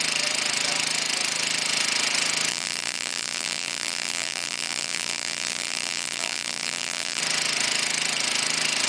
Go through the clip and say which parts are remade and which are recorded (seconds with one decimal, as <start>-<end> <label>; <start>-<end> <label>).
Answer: 0.0-2.5 recorded; 2.5-7.2 remade; 7.2-8.9 recorded